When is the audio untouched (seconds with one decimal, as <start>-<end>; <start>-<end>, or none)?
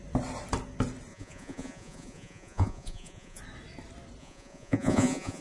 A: 0.0-1.1; 3.4-4.2